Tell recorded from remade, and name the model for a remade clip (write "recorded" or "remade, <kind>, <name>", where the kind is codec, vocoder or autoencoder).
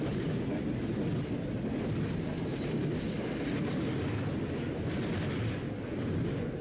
recorded